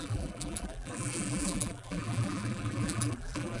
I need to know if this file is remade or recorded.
remade